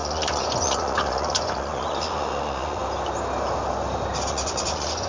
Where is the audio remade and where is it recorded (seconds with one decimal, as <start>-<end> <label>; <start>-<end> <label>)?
0.0-2.8 remade; 2.8-4.3 recorded; 4.3-5.1 remade